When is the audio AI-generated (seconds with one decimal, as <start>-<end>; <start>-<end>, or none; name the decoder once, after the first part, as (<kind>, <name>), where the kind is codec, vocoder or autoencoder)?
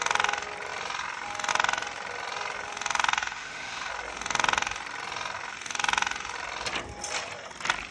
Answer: 3.2-3.9 (autoencoder, DAC-VAE)